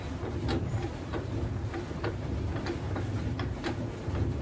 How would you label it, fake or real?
real